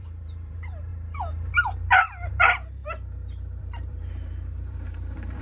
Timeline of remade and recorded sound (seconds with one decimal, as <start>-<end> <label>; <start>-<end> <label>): 0.0-2.8 remade; 2.8-3.6 recorded; 3.6-5.4 remade